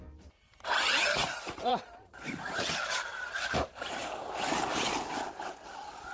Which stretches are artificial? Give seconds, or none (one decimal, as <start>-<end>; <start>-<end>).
1.2-2.1; 3.1-4.9